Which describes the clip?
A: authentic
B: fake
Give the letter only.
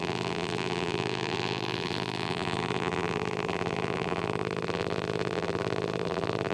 B